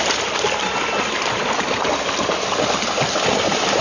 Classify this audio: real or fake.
real